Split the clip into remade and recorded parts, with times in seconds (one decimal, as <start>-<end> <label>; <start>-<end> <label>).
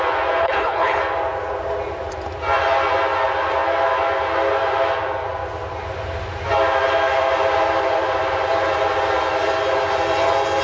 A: 0.0-0.4 recorded; 0.4-1.0 remade; 1.0-10.6 recorded